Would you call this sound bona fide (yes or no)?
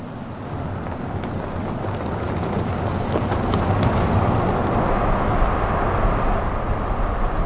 yes